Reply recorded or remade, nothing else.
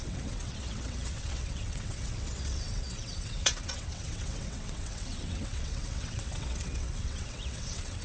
remade